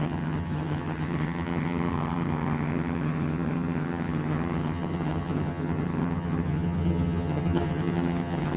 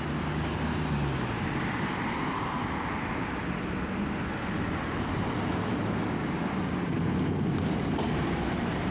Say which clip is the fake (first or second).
first